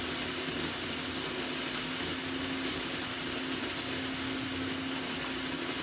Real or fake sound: real